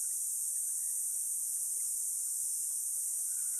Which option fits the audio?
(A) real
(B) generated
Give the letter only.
A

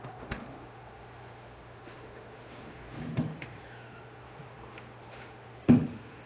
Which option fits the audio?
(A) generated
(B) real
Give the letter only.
A